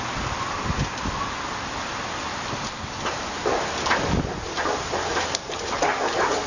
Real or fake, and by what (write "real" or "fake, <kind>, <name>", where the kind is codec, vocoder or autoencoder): real